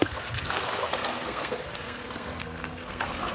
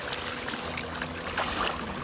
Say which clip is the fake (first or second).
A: first